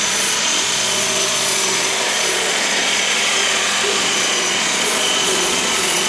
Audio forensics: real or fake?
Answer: fake